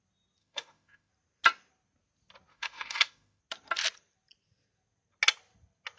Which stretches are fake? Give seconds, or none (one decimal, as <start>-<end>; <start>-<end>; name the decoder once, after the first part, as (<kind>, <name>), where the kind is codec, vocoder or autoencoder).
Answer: 0.4-1.1 (autoencoder, DAC-VAE); 2.5-3.4